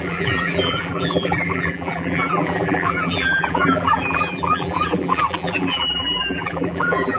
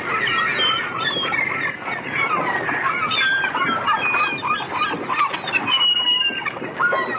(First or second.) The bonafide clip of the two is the second